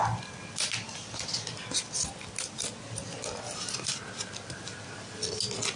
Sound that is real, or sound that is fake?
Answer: real